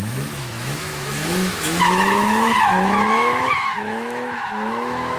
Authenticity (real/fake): fake